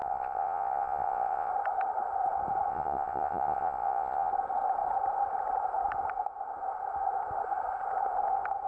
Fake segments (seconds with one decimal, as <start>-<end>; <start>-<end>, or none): 0.0-1.5; 2.7-4.3